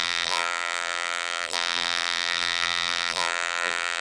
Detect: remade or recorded remade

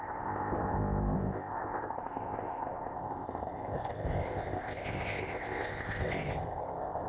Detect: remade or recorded remade